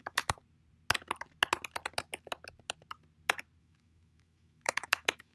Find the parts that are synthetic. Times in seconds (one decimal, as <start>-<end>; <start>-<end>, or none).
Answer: 0.0-0.4; 3.6-5.3

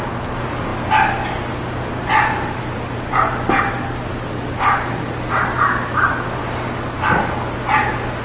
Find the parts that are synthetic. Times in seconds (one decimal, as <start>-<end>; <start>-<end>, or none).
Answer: none

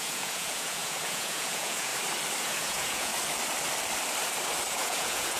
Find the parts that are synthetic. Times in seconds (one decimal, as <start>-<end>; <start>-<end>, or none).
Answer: 0.0-1.9; 2.4-3.1; 4.7-5.4

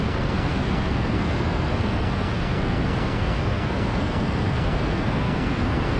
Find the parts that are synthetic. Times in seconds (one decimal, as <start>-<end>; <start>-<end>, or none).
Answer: 0.0-6.0

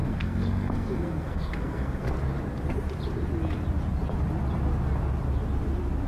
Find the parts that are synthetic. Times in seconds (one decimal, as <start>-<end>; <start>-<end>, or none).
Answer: 0.0-2.1